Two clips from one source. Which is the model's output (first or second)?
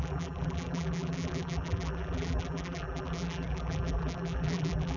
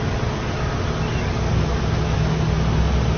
first